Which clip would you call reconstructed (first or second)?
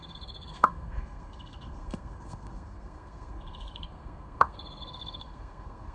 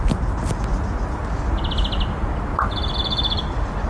first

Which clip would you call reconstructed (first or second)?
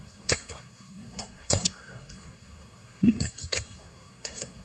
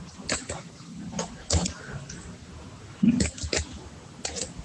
first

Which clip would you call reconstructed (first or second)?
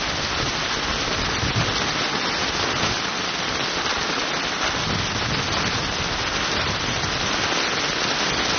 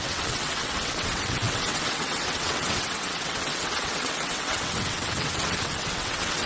second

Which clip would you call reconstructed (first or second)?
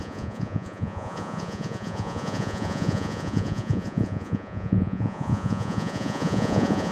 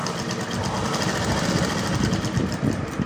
first